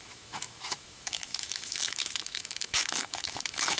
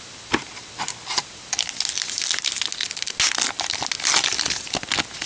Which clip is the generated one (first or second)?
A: first